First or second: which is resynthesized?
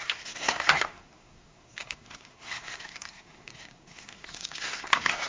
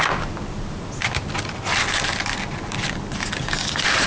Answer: first